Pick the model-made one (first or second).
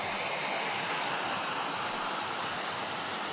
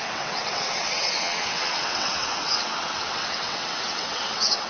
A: second